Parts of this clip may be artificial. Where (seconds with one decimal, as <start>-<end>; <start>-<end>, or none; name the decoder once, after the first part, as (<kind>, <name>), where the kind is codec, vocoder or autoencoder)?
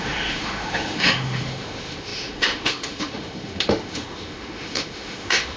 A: 0.0-5.6 (autoencoder, DAC-VAE)